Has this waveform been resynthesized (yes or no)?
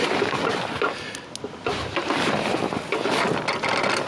no